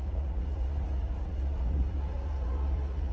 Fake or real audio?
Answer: fake